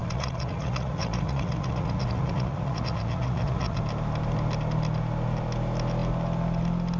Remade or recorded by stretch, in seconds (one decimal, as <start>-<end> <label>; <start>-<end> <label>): 0.0-3.8 remade; 3.8-7.0 recorded